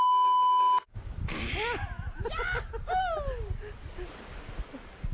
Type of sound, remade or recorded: recorded